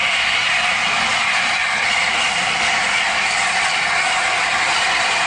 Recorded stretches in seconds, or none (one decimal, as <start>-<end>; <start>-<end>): 0.0-5.3